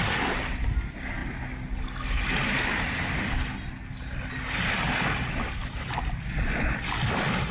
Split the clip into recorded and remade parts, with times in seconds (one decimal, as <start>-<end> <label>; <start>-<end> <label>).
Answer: 0.0-7.5 recorded